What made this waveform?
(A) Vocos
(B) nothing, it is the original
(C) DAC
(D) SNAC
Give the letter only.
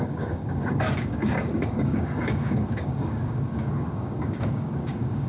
C